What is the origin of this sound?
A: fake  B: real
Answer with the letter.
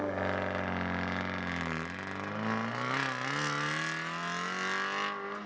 B